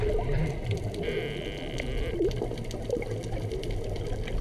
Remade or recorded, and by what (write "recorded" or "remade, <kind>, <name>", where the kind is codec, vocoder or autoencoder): recorded